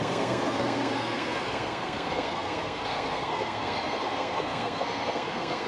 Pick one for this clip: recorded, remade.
remade